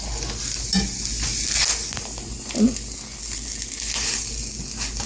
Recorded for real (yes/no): yes